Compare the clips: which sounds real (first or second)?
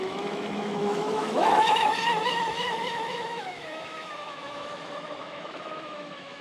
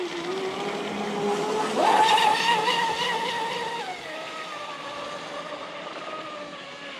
second